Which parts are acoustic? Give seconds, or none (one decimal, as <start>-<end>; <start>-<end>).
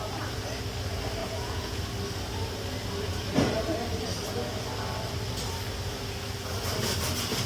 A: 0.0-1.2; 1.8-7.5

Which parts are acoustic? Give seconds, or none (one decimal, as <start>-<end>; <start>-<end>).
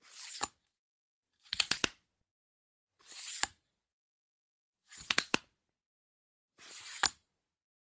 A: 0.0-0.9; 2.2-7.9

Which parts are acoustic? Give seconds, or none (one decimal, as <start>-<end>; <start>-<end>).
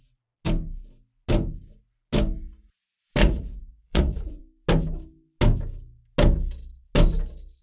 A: 0.0-3.2; 4.4-7.6